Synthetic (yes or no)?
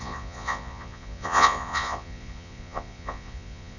yes